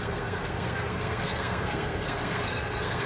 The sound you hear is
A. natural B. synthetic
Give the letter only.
B